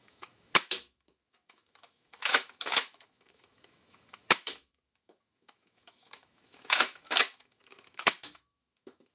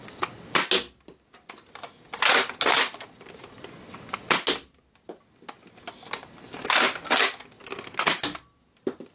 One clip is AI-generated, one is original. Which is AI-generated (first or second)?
first